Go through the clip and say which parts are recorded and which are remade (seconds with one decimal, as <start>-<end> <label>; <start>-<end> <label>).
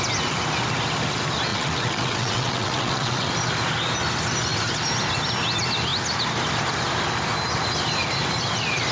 0.0-1.5 recorded; 1.5-3.3 remade; 3.3-8.9 recorded